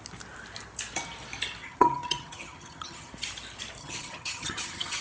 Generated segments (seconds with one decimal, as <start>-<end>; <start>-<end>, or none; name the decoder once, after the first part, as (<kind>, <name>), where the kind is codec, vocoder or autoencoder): 1.6-3.1 (vocoder, HiFi-GAN); 3.8-5.0

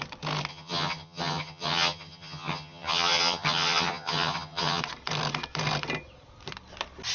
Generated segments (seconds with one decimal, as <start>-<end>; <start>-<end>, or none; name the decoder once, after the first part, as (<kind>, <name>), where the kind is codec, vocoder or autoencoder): 0.5-4.8 (vocoder, HiFi-GAN)